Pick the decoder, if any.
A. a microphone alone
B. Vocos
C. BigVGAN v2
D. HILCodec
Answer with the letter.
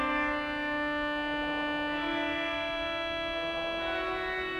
A